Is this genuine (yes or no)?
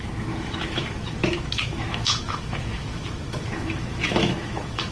no